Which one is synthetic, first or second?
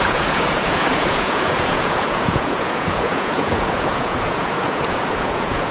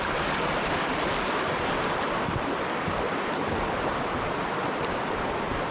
first